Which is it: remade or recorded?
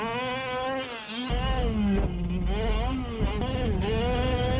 recorded